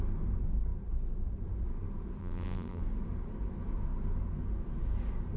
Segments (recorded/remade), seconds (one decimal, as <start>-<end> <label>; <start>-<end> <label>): 0.0-2.2 recorded; 2.2-2.8 remade; 2.8-5.4 recorded